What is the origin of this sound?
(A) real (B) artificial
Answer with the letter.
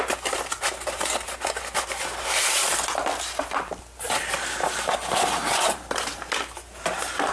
A